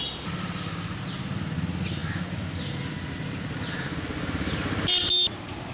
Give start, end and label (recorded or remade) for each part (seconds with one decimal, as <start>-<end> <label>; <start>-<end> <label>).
0.0-5.7 recorded